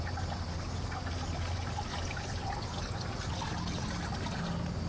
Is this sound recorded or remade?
recorded